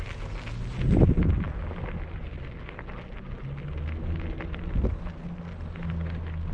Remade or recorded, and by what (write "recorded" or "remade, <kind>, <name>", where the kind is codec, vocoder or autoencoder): recorded